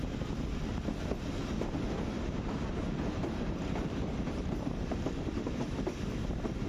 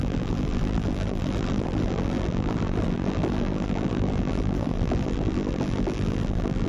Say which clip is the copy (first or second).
second